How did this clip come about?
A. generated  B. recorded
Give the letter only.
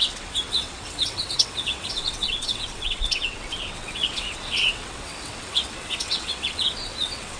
A